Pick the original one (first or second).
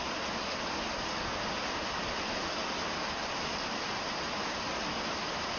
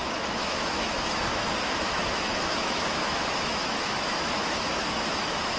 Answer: first